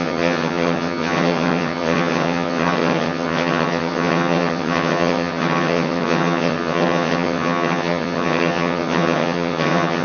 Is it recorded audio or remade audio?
remade